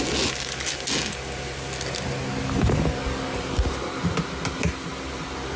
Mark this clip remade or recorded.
recorded